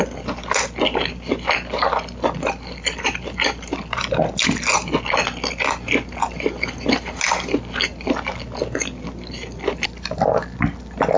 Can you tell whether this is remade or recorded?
recorded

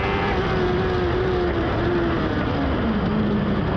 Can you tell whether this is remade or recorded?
recorded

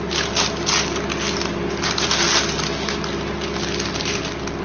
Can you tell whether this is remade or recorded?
recorded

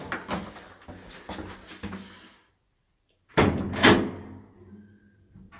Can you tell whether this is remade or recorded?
recorded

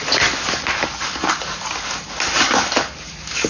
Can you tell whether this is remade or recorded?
remade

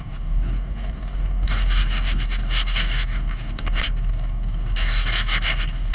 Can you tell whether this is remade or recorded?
remade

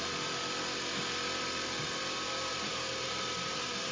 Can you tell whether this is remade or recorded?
recorded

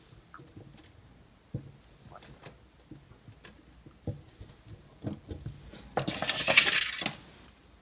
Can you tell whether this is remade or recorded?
recorded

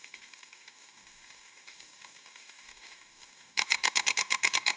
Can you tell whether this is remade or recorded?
remade